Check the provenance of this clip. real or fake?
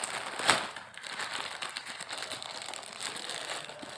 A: real